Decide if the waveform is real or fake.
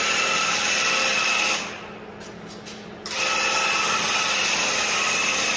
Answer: real